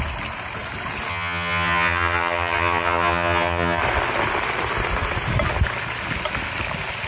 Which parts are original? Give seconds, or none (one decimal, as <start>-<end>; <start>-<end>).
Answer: 0.0-1.1; 3.8-7.1